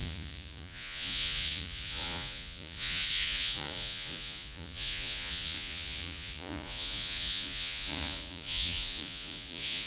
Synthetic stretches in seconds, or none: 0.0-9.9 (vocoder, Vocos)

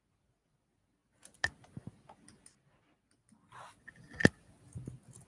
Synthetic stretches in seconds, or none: none

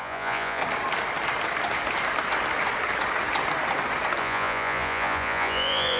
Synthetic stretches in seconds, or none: 0.0-0.6 (vocoder, Vocos); 4.2-6.0